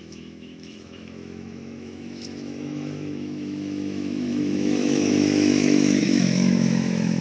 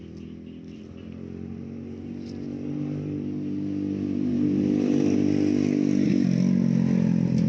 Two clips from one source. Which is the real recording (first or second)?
second